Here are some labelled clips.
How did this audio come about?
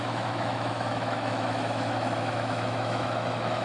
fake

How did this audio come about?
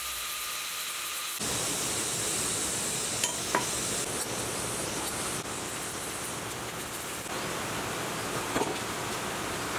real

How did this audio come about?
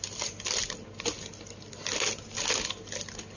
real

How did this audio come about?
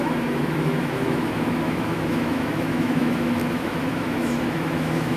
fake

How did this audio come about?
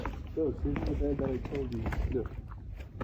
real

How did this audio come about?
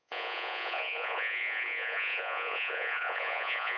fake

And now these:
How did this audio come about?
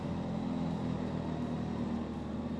real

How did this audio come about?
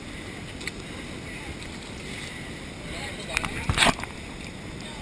real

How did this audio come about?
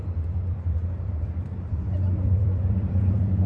fake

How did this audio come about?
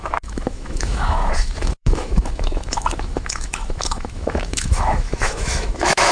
fake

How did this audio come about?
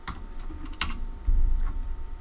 real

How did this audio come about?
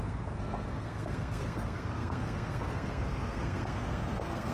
fake